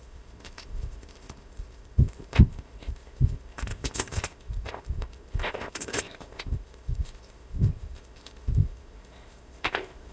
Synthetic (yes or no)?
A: yes